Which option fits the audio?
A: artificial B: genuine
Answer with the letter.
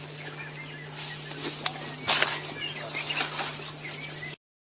B